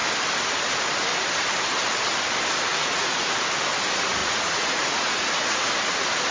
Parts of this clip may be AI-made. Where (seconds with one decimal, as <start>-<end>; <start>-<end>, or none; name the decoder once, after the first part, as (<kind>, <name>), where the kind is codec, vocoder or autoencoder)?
2.7-3.2 (vocoder, Vocos); 4.2-5.7